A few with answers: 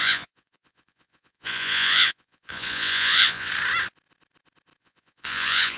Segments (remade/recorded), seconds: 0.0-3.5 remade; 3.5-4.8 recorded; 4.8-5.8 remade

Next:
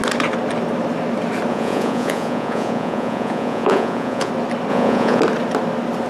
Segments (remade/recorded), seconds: 0.0-1.5 recorded; 1.5-4.3 remade; 4.3-4.7 recorded; 4.7-5.2 remade; 5.2-6.1 recorded

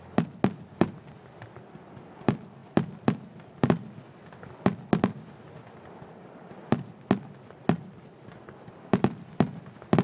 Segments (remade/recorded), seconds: 0.0-10.0 recorded